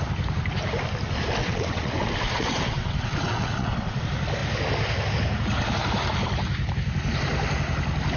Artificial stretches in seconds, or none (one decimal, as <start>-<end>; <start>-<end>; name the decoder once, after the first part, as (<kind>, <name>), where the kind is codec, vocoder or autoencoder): 1.4-4.0 (vocoder, WaveNeXt)